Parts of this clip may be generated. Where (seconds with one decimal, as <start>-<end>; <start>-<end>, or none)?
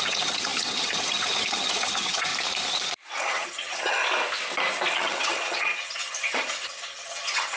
0.0-2.3; 3.2-4.0; 4.9-7.6